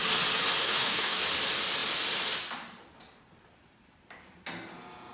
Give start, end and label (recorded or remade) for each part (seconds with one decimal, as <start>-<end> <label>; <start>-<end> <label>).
0.0-0.6 recorded; 0.6-1.2 remade; 1.2-5.1 recorded